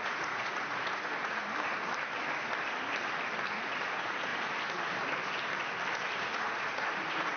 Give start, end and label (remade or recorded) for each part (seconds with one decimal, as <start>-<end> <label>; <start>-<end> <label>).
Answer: 0.0-1.4 remade; 1.4-3.5 recorded; 3.5-4.3 remade; 4.3-6.2 recorded; 6.2-7.4 remade